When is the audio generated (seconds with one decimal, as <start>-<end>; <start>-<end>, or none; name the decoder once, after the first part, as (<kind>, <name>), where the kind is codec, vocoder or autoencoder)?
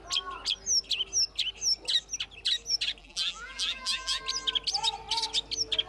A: 3.0-4.2 (vocoder, BigVGAN v2)